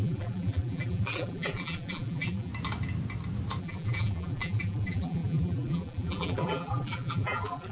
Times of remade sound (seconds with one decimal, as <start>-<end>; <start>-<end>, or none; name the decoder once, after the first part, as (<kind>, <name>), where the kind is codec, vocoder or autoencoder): 0.0-2.5 (vocoder, BigVGAN v2); 3.6-7.7